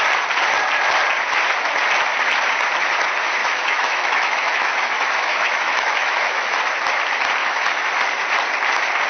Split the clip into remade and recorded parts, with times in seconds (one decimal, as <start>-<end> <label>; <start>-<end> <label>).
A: 0.0-3.4 recorded; 3.4-6.6 remade; 6.6-7.4 recorded; 7.4-7.9 remade; 7.9-9.1 recorded